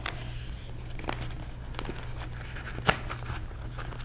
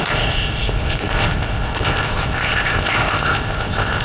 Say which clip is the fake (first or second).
second